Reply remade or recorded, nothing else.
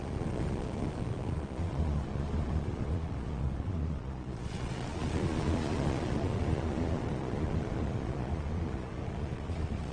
remade